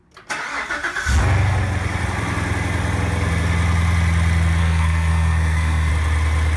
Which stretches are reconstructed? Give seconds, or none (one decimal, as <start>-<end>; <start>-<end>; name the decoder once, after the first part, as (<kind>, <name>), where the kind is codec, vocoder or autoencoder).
4.6-5.9 (codec, SNAC)